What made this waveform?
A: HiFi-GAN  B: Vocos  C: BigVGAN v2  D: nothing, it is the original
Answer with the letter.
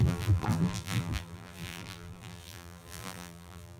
C